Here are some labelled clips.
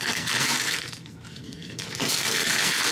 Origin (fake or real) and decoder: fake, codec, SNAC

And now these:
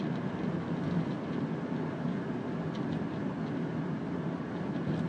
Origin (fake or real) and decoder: real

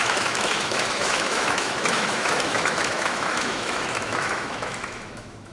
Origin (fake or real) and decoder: fake, autoencoder, DAC-VAE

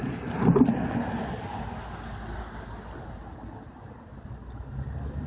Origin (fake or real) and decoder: real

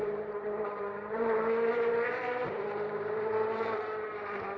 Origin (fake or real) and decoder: fake, vocoder, BigVGAN v2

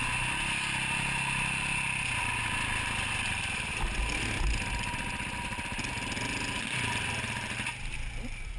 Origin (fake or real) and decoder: real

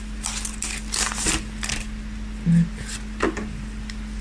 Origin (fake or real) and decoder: real